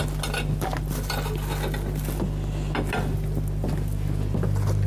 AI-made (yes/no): no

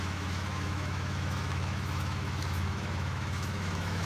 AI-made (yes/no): yes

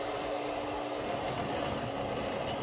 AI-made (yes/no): no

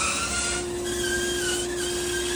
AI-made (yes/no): no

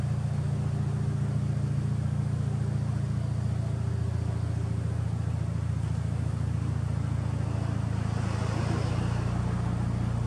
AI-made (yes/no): no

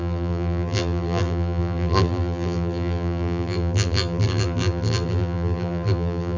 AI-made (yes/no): yes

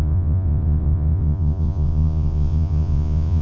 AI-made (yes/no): yes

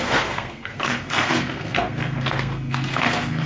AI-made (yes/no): yes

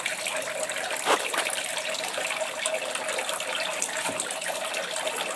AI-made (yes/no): no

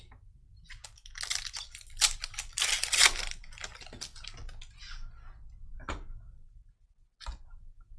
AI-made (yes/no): no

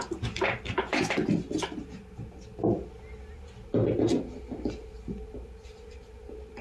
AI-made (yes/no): no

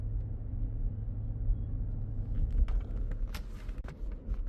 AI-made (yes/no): no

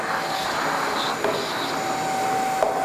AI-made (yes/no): no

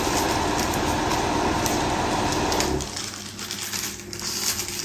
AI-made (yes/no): no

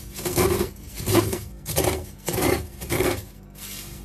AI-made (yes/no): yes